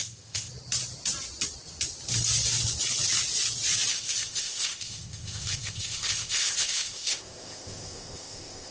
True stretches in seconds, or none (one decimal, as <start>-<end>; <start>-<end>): 0.5-3.9